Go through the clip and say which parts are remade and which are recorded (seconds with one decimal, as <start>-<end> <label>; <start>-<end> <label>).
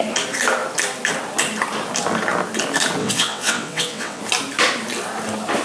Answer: 0.0-3.0 recorded; 3.0-4.2 remade; 4.2-5.6 recorded